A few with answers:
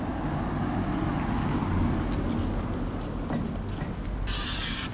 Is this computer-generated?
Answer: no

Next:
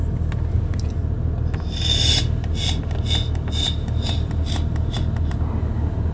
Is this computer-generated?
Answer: no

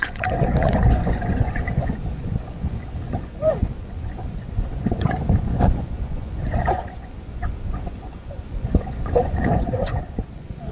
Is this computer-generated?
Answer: yes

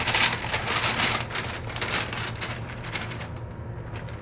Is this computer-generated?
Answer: no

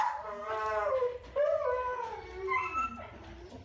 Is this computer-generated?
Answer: no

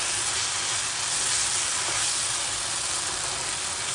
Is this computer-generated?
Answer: no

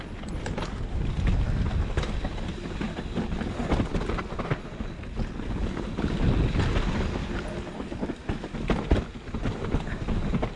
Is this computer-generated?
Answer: no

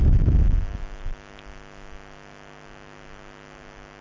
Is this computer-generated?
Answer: no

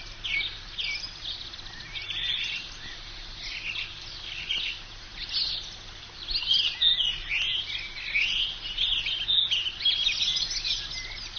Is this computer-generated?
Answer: no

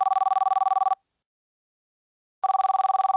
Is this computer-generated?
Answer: no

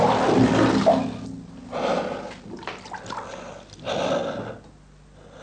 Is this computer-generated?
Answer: no